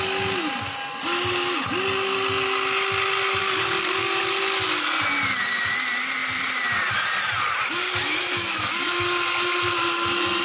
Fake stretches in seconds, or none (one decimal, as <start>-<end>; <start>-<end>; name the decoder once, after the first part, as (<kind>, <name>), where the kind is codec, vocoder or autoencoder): 3.4-4.2 (codec, DAC)